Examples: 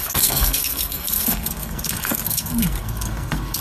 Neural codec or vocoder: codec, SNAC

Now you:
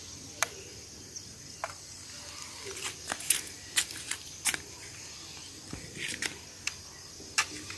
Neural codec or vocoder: none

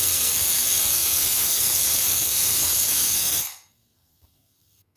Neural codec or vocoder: codec, SNAC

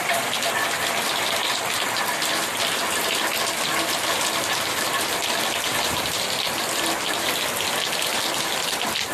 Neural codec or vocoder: none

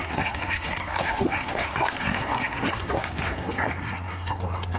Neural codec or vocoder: codec, SNAC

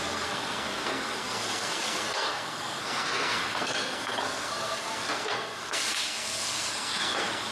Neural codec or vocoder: codec, SNAC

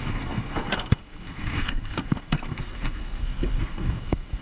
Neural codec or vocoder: codec, SNAC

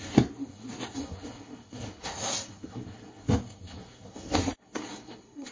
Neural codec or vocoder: codec, SNAC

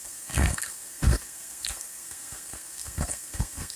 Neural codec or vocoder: codec, SNAC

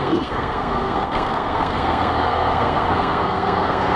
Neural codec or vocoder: codec, SNAC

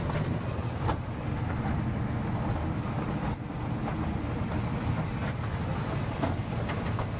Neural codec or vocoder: none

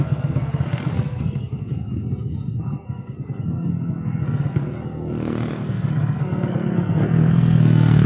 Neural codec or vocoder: codec, SNAC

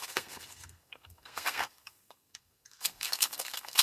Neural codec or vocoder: codec, SNAC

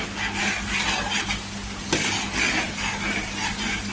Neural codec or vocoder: none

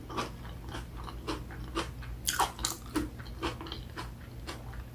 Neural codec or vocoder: none